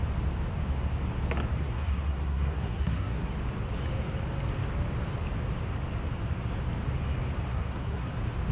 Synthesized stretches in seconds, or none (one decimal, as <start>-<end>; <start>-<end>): 1.6-3.3; 7.5-8.1